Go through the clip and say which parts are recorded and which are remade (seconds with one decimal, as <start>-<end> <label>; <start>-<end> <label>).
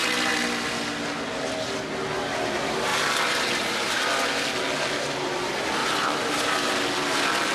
0.0-2.9 recorded; 2.9-4.0 remade; 4.0-5.8 recorded; 5.8-6.7 remade; 6.7-7.5 recorded